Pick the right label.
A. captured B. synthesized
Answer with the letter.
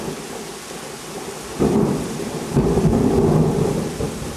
B